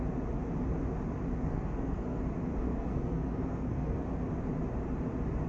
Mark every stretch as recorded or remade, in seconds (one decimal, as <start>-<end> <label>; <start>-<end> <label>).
0.0-1.3 recorded; 1.3-2.2 remade; 2.2-2.6 recorded; 2.6-4.0 remade; 4.0-5.5 recorded